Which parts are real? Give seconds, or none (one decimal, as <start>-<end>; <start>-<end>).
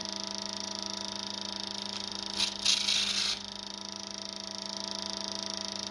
0.0-5.9